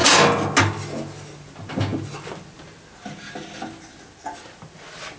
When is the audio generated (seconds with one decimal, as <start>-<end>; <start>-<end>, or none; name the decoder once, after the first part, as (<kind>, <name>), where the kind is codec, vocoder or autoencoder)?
none